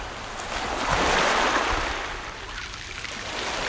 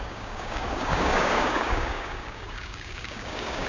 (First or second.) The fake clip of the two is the second